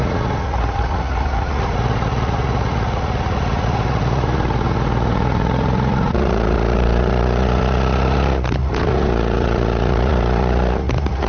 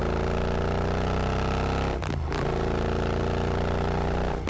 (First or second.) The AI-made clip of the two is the first